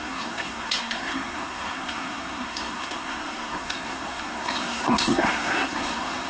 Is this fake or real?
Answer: fake